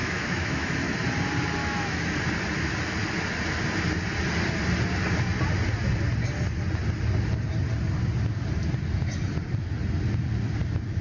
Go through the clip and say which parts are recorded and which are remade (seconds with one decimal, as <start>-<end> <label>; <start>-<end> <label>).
0.0-0.7 remade; 0.7-1.6 recorded; 1.6-2.1 remade; 2.1-11.0 recorded